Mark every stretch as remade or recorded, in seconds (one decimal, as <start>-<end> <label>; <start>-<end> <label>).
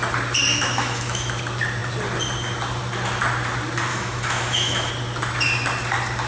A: 0.0-0.5 recorded; 0.5-1.3 remade; 1.3-3.9 recorded; 3.9-4.9 remade; 4.9-6.3 recorded